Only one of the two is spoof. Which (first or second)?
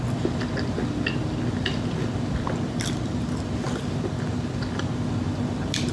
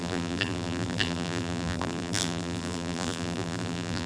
second